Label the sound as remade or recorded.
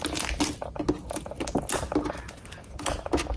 recorded